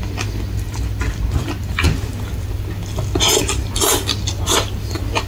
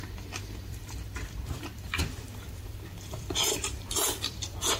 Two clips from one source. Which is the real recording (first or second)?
first